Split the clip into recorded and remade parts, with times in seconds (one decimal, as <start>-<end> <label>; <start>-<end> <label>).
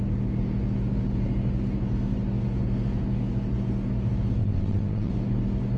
0.0-4.4 recorded; 4.4-5.1 remade; 5.1-5.8 recorded